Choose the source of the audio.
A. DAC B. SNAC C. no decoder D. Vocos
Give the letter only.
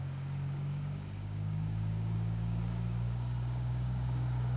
A